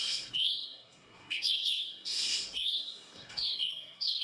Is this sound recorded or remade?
remade